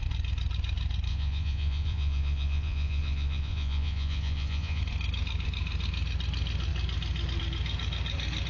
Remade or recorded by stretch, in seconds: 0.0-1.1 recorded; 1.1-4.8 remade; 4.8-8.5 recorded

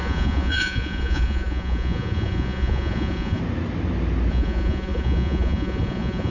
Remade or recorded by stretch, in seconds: 0.0-3.4 remade; 3.4-4.3 recorded; 4.3-6.3 remade

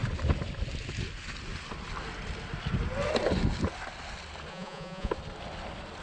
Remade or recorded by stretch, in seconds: 0.0-4.5 recorded; 4.5-5.1 remade; 5.1-6.0 recorded